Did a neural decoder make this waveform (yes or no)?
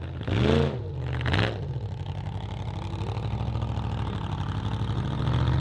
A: no